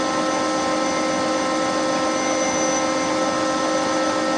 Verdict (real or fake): real